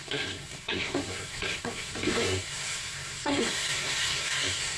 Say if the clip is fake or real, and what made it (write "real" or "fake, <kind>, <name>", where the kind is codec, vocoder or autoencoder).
fake, codec, SNAC